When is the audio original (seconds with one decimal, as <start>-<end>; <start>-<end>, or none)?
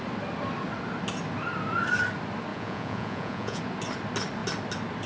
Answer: 0.0-2.5; 3.6-5.1